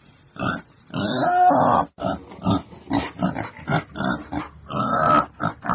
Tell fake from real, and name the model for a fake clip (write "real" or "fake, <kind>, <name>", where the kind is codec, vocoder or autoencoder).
real